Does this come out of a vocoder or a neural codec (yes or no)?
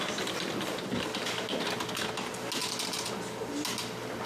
no